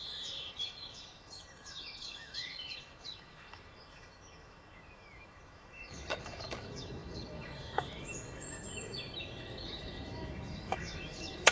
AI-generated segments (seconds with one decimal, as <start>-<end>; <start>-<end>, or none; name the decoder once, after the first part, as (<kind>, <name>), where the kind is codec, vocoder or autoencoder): 0.0-11.5 (autoencoder, DAC-VAE)